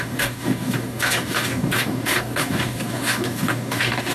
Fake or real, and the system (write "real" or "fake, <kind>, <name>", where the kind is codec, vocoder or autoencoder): fake, codec, DAC